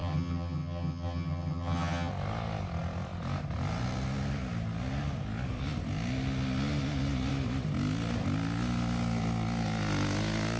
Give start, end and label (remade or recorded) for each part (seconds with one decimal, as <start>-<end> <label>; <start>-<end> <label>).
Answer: 0.0-2.1 remade; 2.1-10.6 recorded

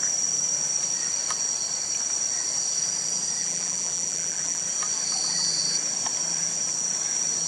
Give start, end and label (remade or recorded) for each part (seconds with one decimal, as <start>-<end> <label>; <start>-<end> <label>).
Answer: 0.0-3.4 recorded; 3.4-4.6 remade; 4.6-7.5 recorded

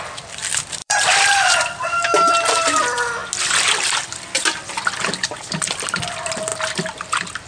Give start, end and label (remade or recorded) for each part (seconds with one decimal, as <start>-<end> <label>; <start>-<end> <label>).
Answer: 0.0-0.8 recorded; 0.8-2.8 remade; 2.8-7.5 recorded

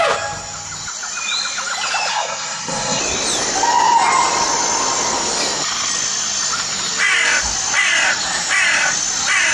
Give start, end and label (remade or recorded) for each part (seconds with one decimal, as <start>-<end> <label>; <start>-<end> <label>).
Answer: 0.0-2.1 recorded; 2.1-3.0 remade; 3.0-9.5 recorded

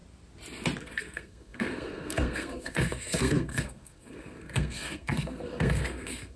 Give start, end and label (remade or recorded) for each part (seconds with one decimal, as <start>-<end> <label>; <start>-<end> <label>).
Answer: 0.0-0.8 recorded; 0.8-6.4 remade